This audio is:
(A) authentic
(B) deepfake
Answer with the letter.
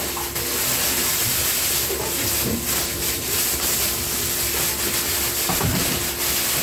A